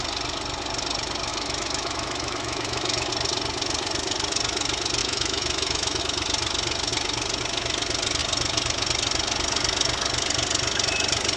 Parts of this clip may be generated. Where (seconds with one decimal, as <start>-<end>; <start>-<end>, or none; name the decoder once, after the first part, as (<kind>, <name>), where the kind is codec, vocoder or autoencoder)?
1.3-3.1 (autoencoder, DAC-VAE); 5.0-6.0